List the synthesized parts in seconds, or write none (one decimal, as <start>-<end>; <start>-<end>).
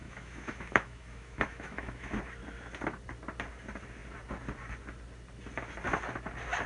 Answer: 0.0-2.2